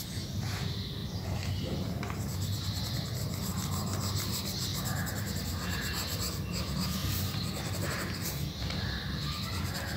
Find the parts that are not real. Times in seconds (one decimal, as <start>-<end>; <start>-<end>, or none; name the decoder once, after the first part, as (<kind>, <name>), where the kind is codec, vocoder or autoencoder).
none